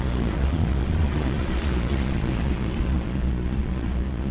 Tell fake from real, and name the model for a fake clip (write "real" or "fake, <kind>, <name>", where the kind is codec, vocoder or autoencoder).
fake, vocoder, Vocos